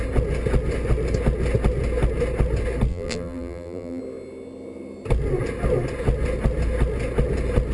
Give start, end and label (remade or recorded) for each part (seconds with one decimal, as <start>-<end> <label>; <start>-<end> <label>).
0.0-2.9 recorded; 2.9-4.0 remade; 4.0-7.7 recorded